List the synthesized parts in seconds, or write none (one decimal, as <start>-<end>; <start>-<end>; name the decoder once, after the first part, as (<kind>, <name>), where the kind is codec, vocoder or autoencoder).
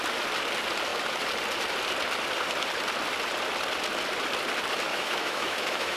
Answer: 4.9-6.0 (autoencoder, DAC-VAE)